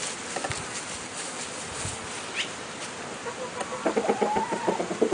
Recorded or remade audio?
recorded